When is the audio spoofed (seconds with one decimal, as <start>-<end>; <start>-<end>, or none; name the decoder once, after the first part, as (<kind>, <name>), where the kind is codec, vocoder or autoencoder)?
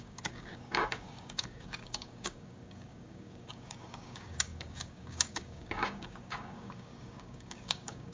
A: 0.0-8.1 (codec, DAC)